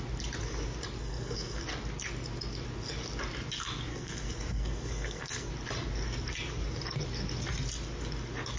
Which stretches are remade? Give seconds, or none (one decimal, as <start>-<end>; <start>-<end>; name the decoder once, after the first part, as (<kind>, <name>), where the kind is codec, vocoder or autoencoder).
1.0-1.6 (codec, SNAC); 3.9-5.5